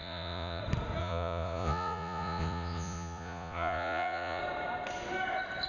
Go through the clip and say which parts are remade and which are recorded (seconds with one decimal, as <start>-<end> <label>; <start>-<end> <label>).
0.0-0.6 remade; 0.6-1.0 recorded; 1.0-4.4 remade; 4.4-5.7 recorded